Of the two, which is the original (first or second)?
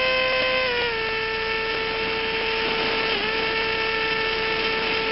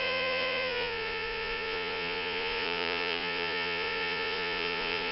first